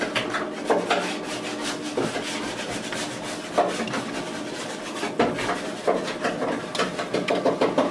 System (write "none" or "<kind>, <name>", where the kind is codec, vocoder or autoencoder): none